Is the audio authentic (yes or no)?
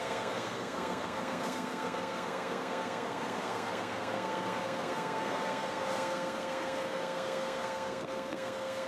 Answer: no